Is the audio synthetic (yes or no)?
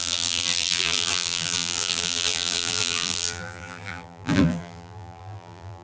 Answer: yes